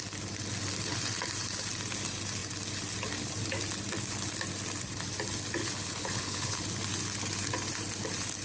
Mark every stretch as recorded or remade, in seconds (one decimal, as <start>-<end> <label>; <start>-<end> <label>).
0.0-5.6 recorded; 5.6-6.6 remade; 6.6-8.4 recorded